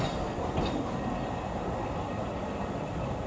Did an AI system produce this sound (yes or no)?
no